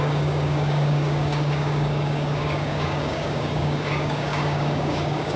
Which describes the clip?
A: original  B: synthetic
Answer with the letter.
B